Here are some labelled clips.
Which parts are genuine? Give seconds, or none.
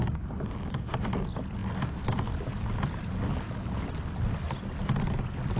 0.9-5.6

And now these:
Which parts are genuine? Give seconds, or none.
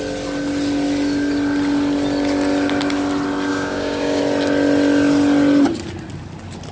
0.0-3.5; 4.2-6.7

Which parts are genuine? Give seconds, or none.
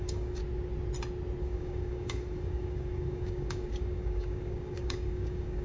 0.4-1.4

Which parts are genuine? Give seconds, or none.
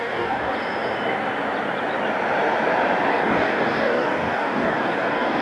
0.5-3.1